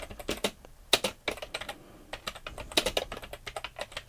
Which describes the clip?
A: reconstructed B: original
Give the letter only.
B